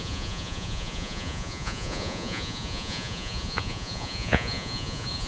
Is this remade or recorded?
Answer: remade